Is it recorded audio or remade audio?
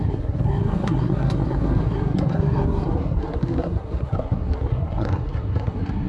remade